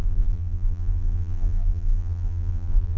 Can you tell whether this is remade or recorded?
remade